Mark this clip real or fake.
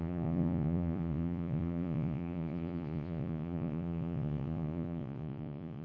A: fake